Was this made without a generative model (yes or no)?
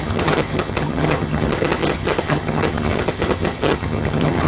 no